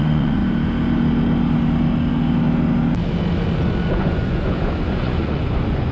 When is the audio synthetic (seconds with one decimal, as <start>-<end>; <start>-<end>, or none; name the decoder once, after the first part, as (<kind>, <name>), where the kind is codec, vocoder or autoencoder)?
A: 0.0-0.4 (vocoder, Vocos); 3.9-5.9